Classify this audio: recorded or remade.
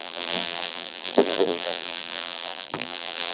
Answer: remade